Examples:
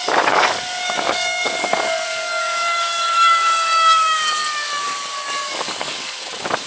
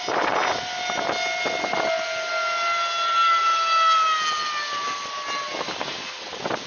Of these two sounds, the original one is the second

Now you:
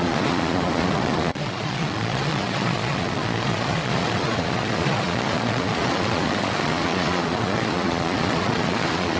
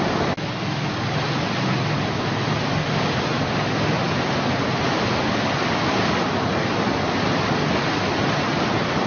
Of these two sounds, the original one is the second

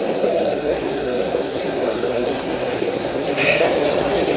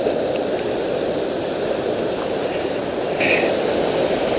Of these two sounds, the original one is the second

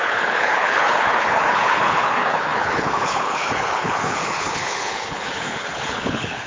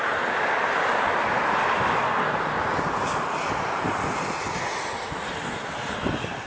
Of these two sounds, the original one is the second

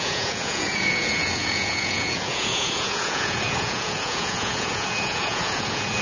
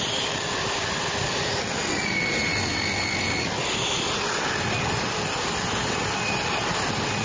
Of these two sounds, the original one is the second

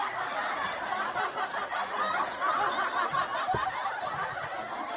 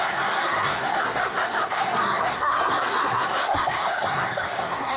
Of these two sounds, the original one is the first